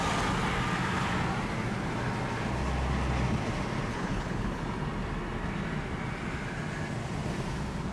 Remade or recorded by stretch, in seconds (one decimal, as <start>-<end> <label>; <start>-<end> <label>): 0.0-3.9 recorded; 3.9-4.6 remade; 4.6-7.9 recorded